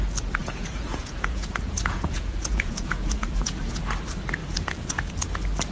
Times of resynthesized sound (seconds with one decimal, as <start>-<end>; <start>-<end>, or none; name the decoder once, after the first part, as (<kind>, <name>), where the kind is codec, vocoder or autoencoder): 0.4-3.8 (vocoder, Vocos); 4.4-5.1

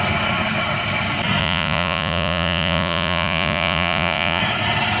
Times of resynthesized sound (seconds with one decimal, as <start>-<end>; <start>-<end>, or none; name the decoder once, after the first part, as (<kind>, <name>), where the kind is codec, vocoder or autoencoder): 1.4-4.4 (vocoder, Vocos)

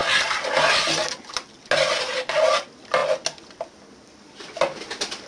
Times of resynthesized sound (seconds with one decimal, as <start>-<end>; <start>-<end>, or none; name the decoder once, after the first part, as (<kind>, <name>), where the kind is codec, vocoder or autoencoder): none

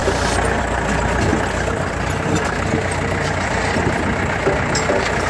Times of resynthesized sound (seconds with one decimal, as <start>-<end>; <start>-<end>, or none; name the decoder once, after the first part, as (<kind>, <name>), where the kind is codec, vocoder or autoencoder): none